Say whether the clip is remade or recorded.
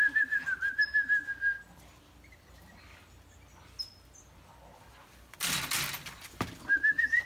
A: recorded